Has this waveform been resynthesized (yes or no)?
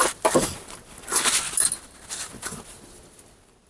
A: no